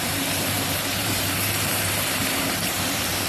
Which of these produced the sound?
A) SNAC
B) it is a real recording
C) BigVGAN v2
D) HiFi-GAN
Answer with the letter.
C